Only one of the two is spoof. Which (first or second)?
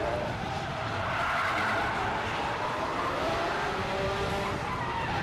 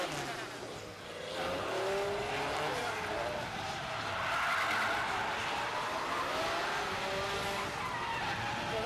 first